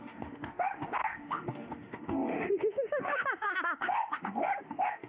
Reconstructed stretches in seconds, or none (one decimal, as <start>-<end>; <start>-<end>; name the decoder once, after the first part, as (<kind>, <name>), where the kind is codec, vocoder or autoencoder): 0.0-5.1 (autoencoder, DAC-VAE)